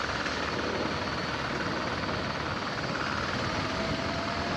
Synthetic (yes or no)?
no